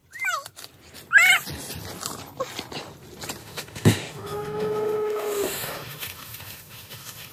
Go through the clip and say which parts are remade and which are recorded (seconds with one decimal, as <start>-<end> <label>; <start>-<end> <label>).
0.0-3.4 recorded; 3.4-7.3 remade